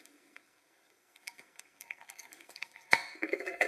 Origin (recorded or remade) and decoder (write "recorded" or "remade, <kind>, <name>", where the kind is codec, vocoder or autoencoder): remade, codec, SNAC